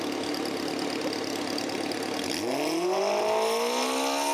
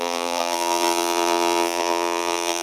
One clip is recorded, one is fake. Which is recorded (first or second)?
first